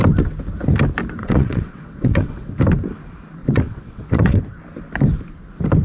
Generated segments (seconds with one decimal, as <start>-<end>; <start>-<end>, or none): 1.2-2.5; 3.4-4.4